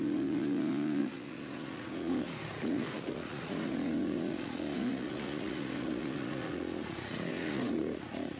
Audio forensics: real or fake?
fake